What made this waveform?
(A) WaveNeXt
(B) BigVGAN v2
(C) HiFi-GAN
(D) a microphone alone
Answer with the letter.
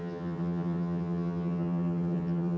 C